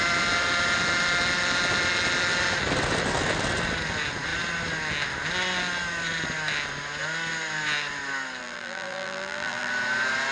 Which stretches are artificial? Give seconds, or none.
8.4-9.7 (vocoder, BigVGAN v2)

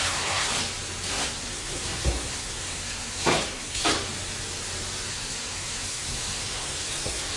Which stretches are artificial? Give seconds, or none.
0.0-0.5 (codec, SNAC); 1.1-3.8; 5.1-7.4

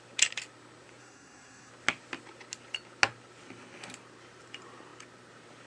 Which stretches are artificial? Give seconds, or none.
1.0-1.7 (codec, SNAC)

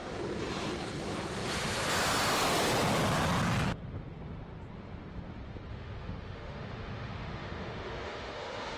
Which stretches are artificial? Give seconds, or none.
5.7-8.8 (autoencoder, DAC-VAE)

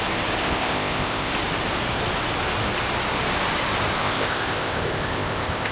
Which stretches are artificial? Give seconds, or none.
0.4-1.3 (codec, ZipCodec); 4.0-5.7

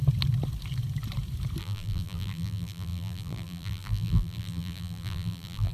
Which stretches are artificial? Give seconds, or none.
1.6-5.7 (vocoder, BigVGAN v2)

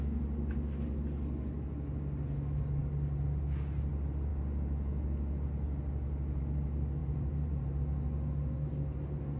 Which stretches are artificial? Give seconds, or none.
7.0-7.8 (vocoder, BigVGAN v2)

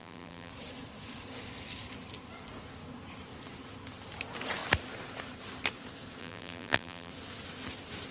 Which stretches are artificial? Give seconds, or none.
0.0-0.5 (vocoder, BigVGAN v2); 6.2-7.1